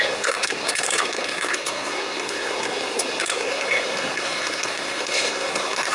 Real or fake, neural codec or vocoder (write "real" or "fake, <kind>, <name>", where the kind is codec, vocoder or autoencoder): fake, codec, SNAC